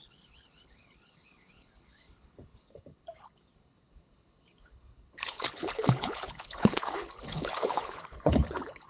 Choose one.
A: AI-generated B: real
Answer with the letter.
A